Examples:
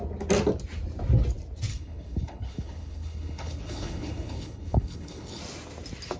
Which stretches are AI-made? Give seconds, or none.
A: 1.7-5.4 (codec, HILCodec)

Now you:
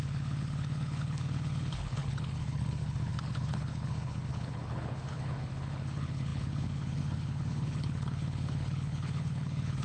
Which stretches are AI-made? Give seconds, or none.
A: 0.0-9.8 (codec, HILCodec)

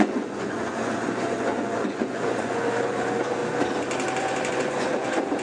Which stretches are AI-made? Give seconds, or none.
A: 0.0-3.4 (vocoder, Vocos); 4.2-5.4